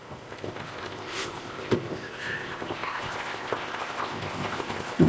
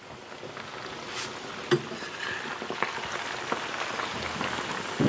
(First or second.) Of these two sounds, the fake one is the first